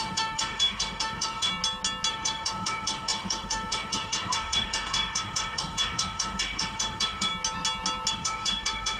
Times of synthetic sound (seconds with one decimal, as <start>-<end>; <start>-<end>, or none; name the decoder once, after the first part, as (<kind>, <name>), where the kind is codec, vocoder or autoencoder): 0.0-1.5 (autoencoder, DAC-VAE); 2.1-7.3; 8.1-9.0